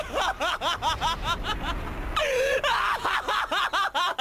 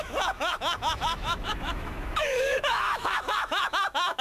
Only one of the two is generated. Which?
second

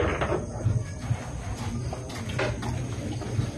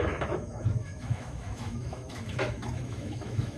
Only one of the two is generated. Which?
second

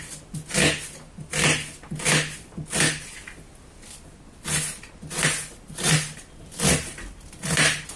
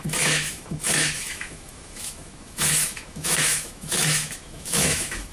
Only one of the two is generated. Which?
second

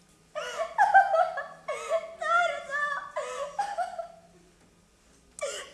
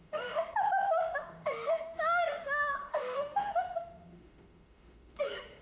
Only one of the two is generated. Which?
second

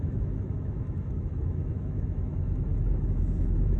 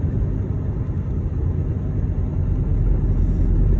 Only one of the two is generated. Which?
first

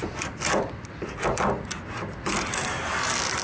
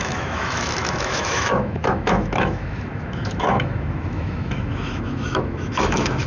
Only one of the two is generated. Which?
second